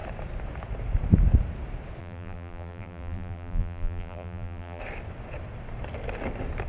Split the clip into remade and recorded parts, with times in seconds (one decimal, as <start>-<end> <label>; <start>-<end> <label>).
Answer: 0.0-2.0 recorded; 2.0-4.8 remade; 4.8-6.7 recorded